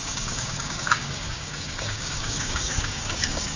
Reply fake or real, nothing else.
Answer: fake